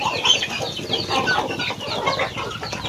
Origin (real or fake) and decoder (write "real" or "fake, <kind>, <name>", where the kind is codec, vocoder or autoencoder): real